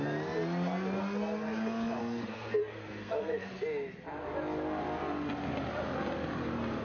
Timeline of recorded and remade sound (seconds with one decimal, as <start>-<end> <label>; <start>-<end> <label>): 0.0-2.0 recorded; 2.0-3.5 remade; 3.5-6.8 recorded